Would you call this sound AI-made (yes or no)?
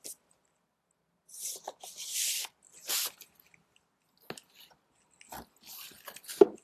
no